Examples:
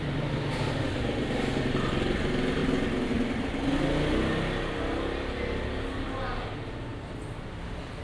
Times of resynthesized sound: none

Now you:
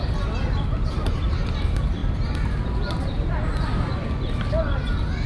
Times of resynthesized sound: none

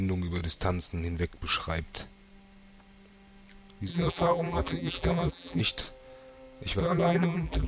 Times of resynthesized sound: 3.9-5.6 (vocoder, BigVGAN v2); 6.8-7.7

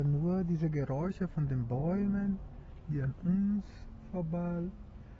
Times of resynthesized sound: 3.8-5.2 (autoencoder, DAC-VAE)